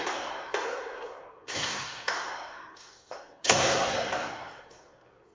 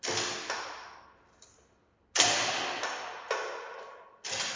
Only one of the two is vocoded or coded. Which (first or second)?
first